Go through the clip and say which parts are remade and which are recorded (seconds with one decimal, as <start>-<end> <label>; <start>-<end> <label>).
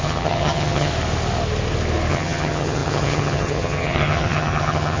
0.0-0.9 remade; 0.9-2.1 recorded; 2.1-5.0 remade